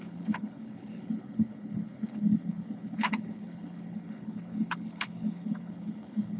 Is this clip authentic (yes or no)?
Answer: no